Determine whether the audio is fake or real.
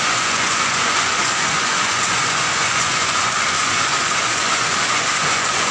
fake